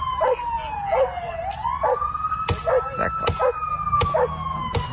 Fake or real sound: real